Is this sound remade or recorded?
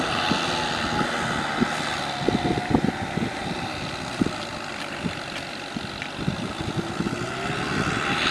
recorded